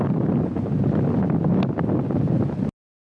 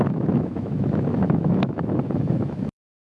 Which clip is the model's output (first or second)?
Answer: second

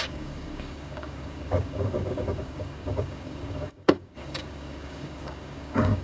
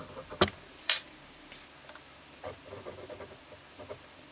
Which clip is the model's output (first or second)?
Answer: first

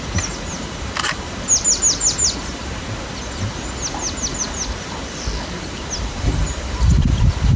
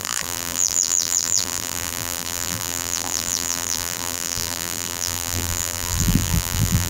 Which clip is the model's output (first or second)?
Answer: second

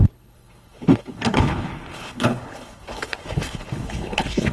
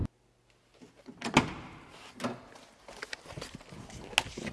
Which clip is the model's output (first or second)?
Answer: first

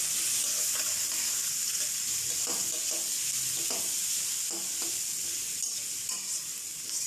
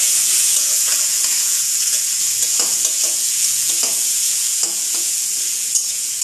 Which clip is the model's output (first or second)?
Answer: second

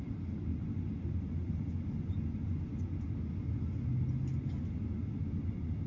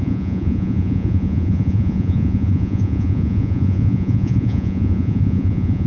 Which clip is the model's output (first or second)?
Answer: second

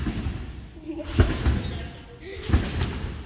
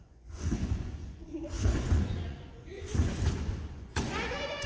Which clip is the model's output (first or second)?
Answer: second